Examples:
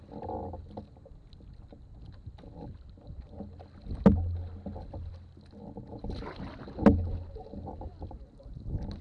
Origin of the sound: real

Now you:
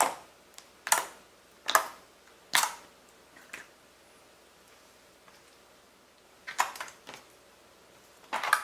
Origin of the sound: real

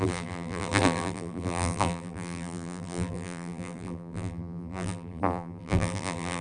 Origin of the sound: fake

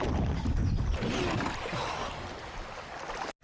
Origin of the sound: real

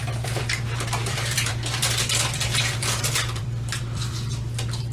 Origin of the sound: fake